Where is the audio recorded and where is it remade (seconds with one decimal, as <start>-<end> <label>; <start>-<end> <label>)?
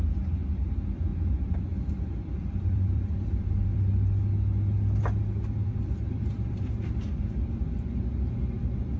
0.0-1.1 recorded; 1.1-3.8 remade; 3.8-5.6 recorded; 5.6-7.6 remade; 7.6-9.0 recorded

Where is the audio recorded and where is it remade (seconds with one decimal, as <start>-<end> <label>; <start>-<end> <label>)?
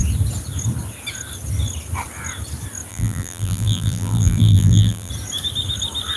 0.0-2.9 recorded; 2.9-5.1 remade; 5.1-6.2 recorded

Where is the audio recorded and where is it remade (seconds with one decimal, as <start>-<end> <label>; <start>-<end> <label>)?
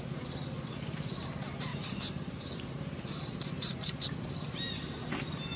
0.0-1.7 recorded; 1.7-5.1 remade; 5.1-5.6 recorded